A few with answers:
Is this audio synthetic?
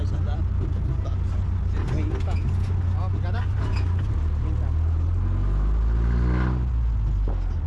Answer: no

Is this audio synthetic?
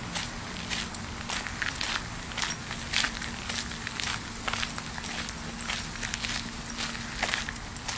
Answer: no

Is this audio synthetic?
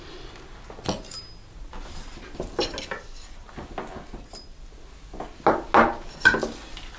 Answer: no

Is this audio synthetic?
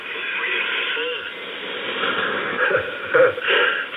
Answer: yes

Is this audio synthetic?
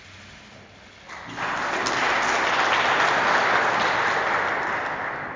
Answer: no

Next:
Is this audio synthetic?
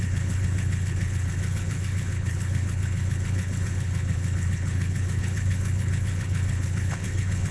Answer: yes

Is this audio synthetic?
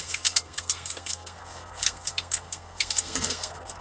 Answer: yes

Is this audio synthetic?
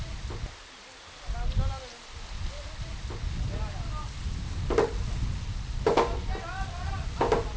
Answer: no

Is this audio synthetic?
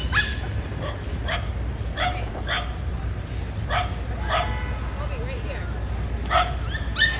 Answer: no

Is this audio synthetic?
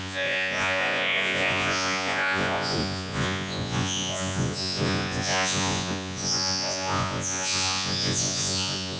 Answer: yes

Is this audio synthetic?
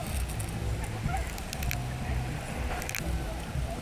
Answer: no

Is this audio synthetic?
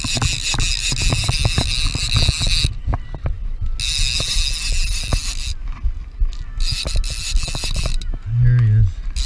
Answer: no